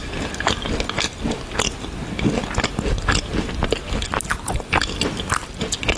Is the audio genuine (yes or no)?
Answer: yes